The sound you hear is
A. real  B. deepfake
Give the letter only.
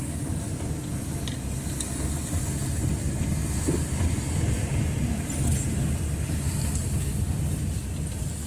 A